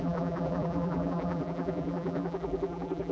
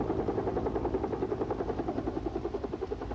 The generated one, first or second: first